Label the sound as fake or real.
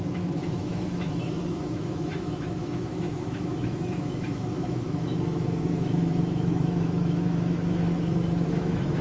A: fake